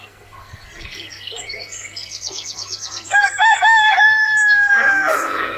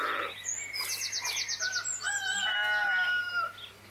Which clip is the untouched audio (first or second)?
second